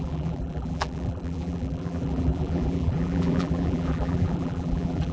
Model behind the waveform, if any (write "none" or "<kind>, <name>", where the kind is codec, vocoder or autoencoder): vocoder, BigVGAN v2